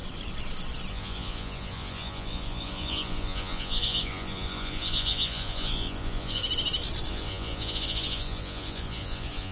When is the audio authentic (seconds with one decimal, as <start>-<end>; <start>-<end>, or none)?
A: 0.0-0.9; 6.4-7.1